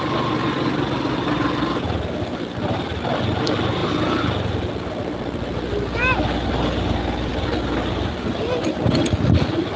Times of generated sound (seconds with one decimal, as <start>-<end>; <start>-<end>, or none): none